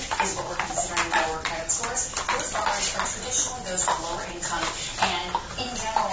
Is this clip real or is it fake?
real